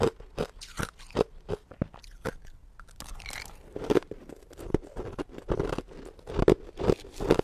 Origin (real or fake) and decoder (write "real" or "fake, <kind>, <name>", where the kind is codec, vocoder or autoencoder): real